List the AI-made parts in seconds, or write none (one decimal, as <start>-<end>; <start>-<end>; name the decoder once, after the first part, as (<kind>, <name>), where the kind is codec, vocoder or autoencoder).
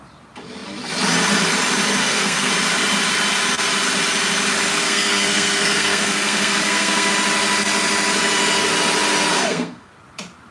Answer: 2.0-2.5 (codec, SNAC); 4.7-7.1; 9.3-9.9